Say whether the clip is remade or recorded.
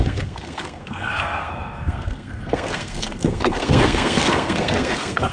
remade